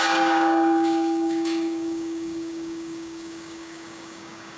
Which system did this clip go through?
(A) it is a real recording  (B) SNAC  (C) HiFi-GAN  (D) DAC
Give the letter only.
D